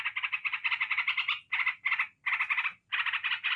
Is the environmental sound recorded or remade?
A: recorded